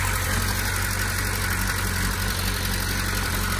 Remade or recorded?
recorded